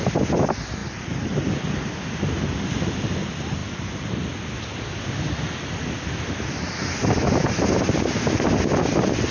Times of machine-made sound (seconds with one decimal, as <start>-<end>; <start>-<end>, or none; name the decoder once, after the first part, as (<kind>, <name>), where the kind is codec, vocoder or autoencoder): none